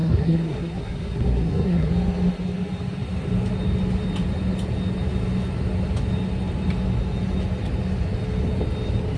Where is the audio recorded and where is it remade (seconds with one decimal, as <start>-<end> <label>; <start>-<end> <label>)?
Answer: 0.0-1.9 remade; 1.9-9.2 recorded